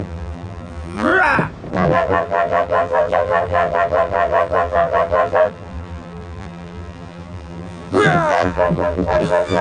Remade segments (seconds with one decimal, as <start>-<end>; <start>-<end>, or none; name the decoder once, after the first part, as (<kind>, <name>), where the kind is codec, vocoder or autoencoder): 0.0-1.1 (vocoder, BigVGAN v2); 1.7-9.6